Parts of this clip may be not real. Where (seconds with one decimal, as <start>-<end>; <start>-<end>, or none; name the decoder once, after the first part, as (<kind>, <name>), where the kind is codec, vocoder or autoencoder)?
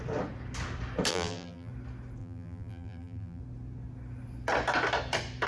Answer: 1.1-1.7 (vocoder, BigVGAN v2); 2.2-3.4